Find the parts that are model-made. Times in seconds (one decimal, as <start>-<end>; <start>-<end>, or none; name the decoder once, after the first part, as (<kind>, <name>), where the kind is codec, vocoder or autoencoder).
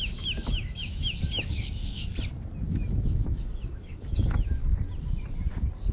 0.0-2.1 (autoencoder, DAC-VAE); 2.6-4.6